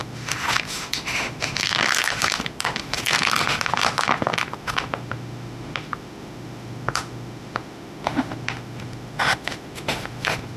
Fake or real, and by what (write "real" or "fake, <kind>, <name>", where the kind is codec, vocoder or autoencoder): fake, autoencoder, DAC-VAE